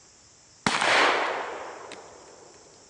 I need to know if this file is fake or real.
real